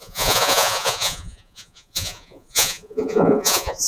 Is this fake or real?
fake